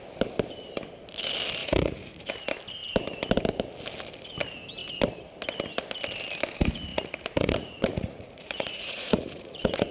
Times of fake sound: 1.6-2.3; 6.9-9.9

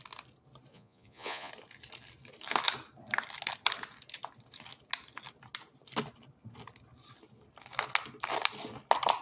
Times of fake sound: 0.7-1.5

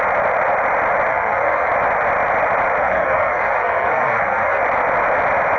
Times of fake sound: 1.1-1.7; 2.8-4.6

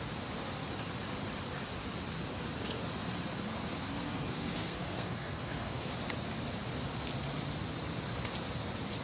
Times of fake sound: 3.7-5.9

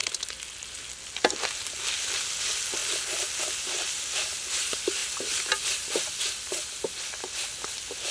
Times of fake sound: none

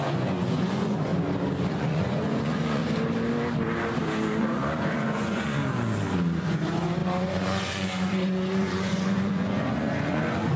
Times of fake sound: 0.0-1.1; 1.7-2.8; 4.4-5.6; 6.4-10.6

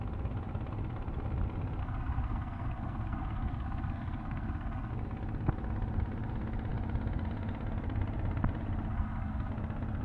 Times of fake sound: 1.8-4.9; 8.9-9.5